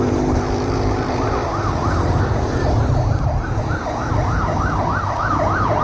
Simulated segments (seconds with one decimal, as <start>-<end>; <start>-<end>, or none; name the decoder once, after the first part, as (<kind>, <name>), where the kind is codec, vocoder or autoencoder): 0.0-1.4 (vocoder, BigVGAN v2); 3.6-4.5; 5.1-5.8